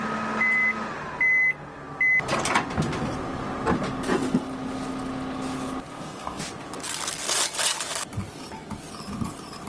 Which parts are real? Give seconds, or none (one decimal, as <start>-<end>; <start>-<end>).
0.0-5.9; 6.4-9.7